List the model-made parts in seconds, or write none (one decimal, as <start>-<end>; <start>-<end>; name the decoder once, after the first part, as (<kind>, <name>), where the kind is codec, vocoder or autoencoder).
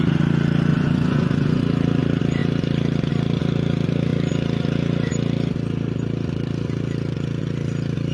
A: 0.7-1.6 (vocoder, Vocos)